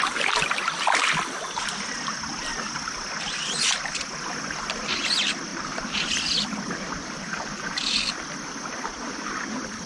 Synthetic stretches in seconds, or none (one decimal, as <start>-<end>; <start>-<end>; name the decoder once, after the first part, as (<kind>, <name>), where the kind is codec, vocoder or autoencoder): none